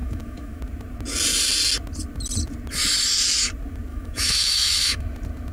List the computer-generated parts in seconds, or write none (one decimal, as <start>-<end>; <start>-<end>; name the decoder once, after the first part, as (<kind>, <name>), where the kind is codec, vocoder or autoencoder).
0.0-0.6 (autoencoder, DAC-VAE); 3.9-5.0